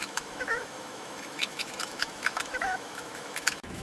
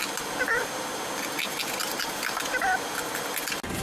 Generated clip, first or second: first